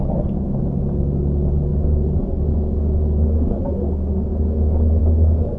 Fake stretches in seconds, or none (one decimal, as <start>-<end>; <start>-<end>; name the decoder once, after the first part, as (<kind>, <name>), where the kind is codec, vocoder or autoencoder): 0.0-0.6 (codec, DAC); 1.7-5.0